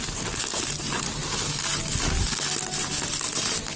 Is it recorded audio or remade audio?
recorded